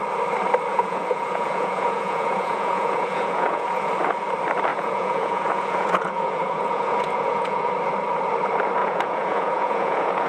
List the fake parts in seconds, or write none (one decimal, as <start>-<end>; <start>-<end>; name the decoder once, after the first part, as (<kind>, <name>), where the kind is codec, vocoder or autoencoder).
0.7-3.9 (vocoder, Vocos); 4.7-7.7; 8.8-10.3